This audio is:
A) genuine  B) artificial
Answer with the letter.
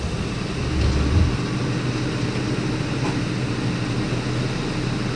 A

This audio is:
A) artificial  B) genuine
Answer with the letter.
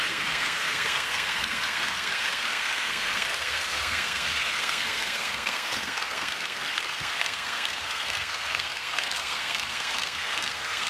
A